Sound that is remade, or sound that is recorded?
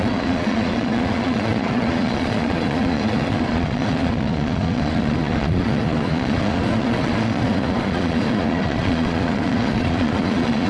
remade